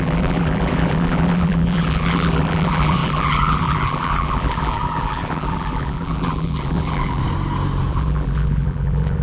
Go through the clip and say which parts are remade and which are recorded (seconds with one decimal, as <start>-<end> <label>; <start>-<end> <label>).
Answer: 0.0-7.2 remade; 7.2-7.9 recorded; 7.9-9.2 remade